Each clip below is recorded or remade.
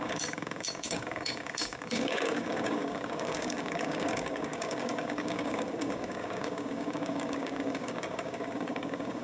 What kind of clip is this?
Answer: remade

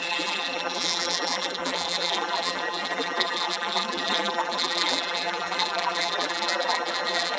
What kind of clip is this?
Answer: remade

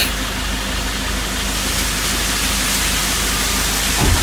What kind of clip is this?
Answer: recorded